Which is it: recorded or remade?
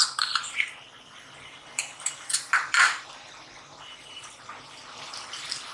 remade